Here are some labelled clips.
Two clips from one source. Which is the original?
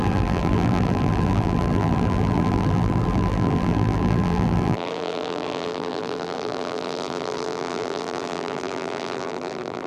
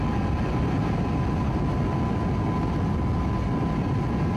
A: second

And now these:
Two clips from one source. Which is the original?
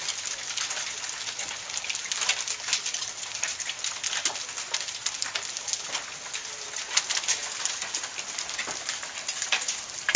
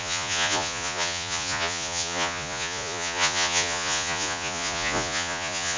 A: first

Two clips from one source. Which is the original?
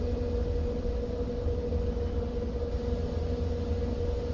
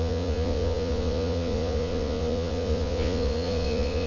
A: first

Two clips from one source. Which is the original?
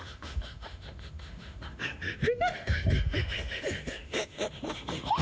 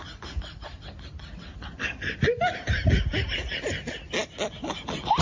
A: second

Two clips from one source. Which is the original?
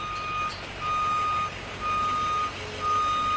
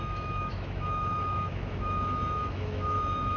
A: first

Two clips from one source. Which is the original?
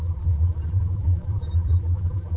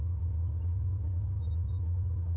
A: second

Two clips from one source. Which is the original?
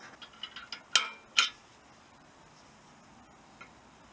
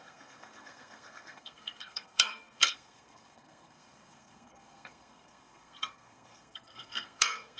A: first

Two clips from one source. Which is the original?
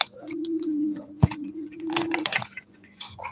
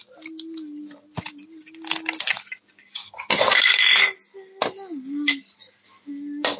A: second